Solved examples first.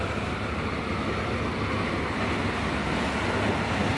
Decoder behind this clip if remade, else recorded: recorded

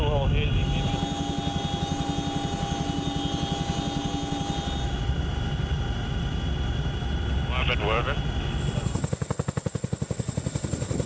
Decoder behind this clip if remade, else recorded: recorded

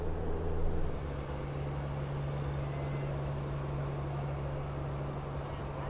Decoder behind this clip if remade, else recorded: recorded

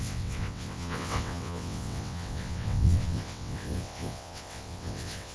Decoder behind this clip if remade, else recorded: remade, vocoder, WaveNeXt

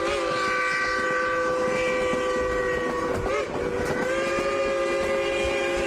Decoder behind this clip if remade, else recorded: recorded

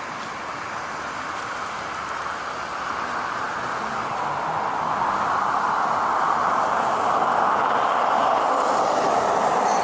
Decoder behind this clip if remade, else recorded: recorded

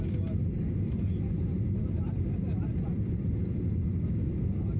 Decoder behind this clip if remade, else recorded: recorded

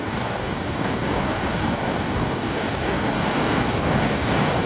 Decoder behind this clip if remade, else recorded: remade, codec, DAC